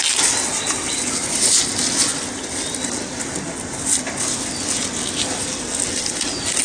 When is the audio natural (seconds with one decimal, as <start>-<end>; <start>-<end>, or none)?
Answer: 0.0-6.6